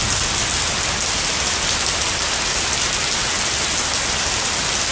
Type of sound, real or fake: real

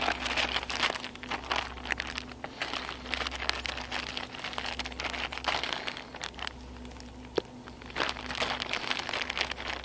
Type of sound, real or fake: real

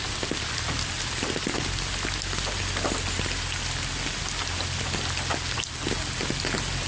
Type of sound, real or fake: real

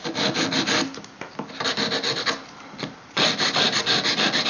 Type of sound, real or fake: real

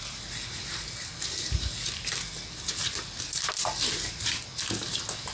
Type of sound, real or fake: real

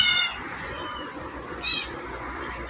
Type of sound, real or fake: fake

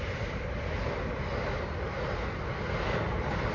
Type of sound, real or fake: real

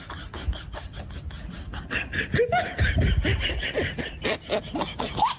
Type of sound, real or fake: real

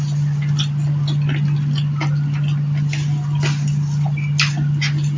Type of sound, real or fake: real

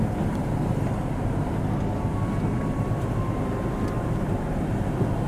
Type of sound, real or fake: real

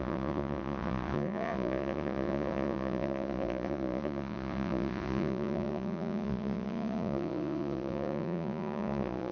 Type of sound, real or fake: fake